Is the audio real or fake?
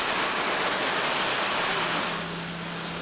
real